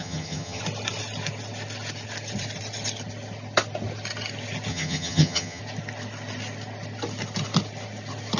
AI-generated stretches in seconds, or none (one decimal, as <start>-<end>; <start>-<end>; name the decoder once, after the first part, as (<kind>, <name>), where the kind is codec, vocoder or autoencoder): 0.0-0.6 (vocoder, HiFi-GAN); 4.7-5.6